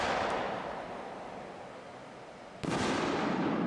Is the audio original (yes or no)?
yes